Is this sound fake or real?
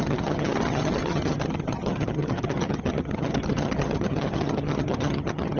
fake